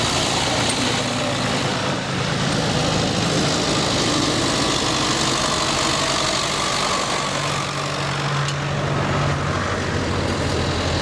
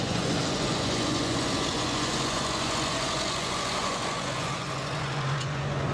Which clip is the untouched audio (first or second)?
first